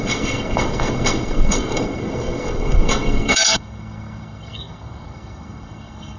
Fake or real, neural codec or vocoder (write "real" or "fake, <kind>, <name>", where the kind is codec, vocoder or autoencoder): fake, codec, SNAC